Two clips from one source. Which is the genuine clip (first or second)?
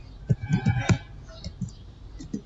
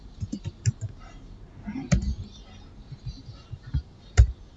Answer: first